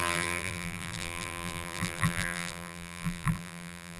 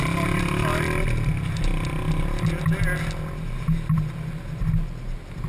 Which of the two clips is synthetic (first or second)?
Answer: first